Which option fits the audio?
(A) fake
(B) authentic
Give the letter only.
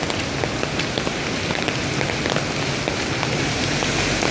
B